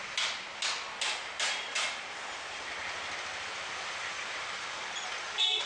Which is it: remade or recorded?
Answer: recorded